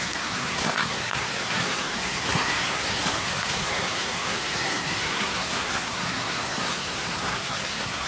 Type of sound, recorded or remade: remade